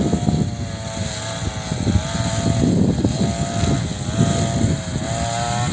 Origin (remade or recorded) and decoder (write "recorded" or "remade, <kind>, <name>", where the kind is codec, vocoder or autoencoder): recorded